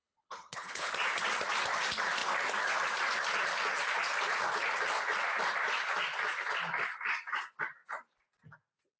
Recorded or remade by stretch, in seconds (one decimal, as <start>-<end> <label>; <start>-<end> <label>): 0.0-0.9 remade; 0.9-9.0 recorded